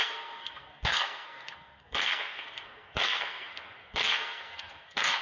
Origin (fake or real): fake